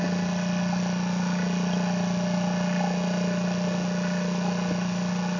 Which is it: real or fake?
real